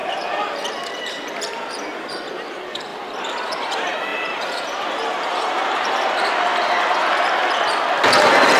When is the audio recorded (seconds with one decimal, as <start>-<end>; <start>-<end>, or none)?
none